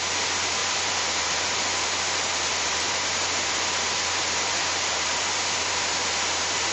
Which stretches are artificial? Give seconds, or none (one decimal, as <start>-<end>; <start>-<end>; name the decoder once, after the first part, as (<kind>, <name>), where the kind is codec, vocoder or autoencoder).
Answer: 0.6-1.7 (vocoder, BigVGAN v2); 2.5-5.2